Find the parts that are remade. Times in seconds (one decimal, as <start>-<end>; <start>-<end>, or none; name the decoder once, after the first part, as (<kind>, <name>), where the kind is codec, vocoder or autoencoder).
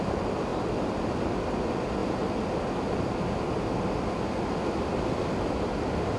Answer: none